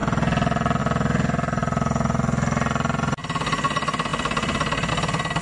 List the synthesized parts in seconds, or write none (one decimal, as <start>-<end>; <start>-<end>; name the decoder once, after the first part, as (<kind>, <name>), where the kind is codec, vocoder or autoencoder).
none